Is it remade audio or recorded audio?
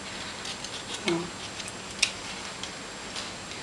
recorded